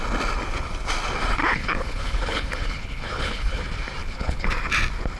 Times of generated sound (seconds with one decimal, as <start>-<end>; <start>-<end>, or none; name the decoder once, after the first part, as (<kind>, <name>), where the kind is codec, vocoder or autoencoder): 1.4-3.6 (codec, HILCodec); 4.0-4.5